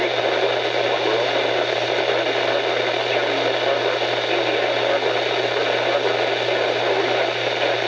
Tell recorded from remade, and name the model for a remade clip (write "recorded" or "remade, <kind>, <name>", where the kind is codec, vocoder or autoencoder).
recorded